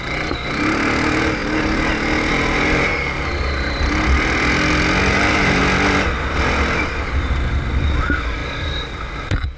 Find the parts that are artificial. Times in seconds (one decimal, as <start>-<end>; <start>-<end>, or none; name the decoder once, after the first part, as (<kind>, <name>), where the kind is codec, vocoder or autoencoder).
5.1-5.6 (vocoder, BigVGAN v2); 8.4-9.6